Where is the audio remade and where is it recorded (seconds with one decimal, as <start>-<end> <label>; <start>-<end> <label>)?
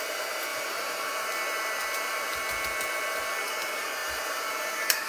0.0-0.5 recorded; 0.5-2.4 remade; 2.4-4.0 recorded; 4.0-5.1 remade